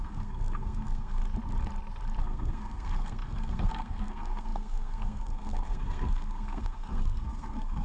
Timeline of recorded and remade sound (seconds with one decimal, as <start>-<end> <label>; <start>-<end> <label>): 0.0-1.2 remade; 1.2-2.2 recorded; 2.2-7.8 remade